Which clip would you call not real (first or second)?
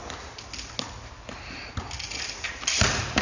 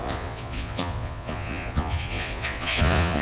second